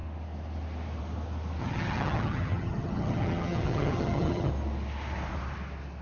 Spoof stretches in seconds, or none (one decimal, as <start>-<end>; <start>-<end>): 1.6-4.5